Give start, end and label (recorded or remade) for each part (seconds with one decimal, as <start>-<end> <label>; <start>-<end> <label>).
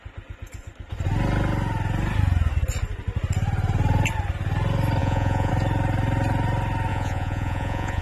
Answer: 0.0-5.0 recorded; 5.0-5.5 remade; 5.5-6.9 recorded; 6.9-8.0 remade